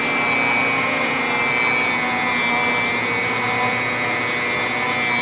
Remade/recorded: recorded